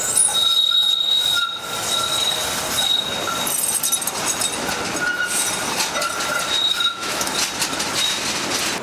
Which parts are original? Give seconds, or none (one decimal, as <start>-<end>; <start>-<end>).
0.0-6.7; 7.3-8.8